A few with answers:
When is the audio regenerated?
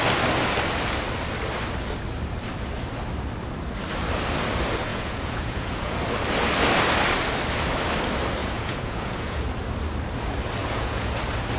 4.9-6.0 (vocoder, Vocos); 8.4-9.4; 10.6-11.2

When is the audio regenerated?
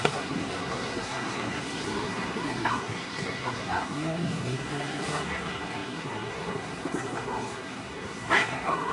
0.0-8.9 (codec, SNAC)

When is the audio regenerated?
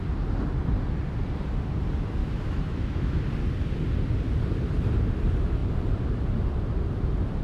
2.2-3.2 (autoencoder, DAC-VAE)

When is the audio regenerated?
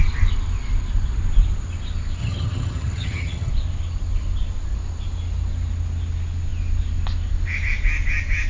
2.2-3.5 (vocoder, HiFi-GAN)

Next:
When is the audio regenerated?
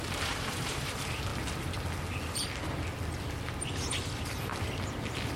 0.0-1.3 (vocoder, BigVGAN v2); 3.6-4.5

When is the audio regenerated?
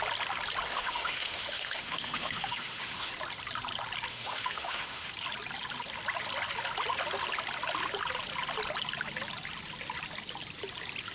0.7-3.1 (autoencoder, DAC-VAE); 4.1-5.1